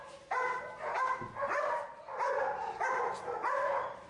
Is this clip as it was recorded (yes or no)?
yes